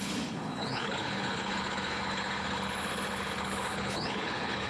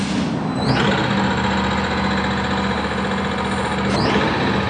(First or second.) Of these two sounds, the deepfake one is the first